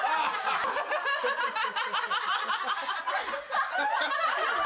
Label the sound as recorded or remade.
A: recorded